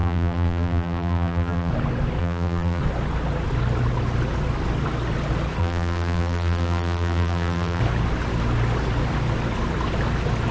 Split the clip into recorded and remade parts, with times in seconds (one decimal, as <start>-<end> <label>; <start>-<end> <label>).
0.0-1.7 remade; 1.7-2.2 recorded; 2.2-2.8 remade; 2.8-5.6 recorded; 5.6-7.8 remade; 7.8-10.5 recorded